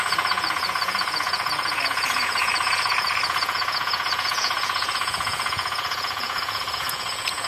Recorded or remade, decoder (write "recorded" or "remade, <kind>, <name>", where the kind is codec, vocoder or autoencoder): remade, vocoder, Vocos